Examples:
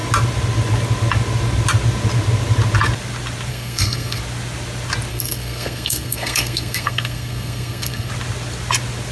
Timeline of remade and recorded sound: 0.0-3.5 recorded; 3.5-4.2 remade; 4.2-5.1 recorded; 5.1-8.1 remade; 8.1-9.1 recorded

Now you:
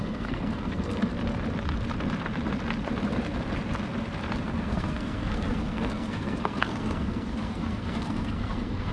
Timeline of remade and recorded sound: 0.0-1.1 remade; 1.1-4.4 recorded; 4.4-8.9 remade

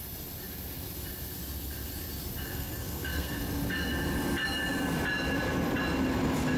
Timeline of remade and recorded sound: 0.0-2.5 recorded; 2.5-3.4 remade; 3.4-6.6 recorded

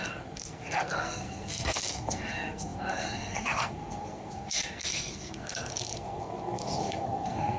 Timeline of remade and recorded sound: 0.0-7.6 remade

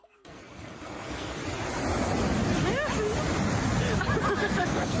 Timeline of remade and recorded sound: 0.0-1.4 remade; 1.4-4.4 recorded; 4.4-5.0 remade

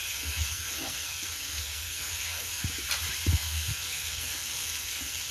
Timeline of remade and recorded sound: 0.0-2.6 remade; 2.6-3.3 recorded; 3.3-5.3 remade

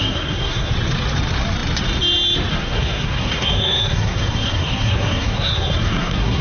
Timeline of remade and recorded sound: 0.0-0.7 remade; 0.7-2.5 recorded; 2.5-6.4 remade